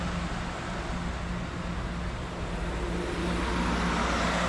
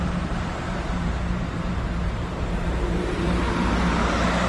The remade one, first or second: second